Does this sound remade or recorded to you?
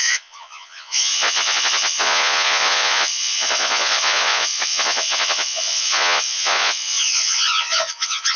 remade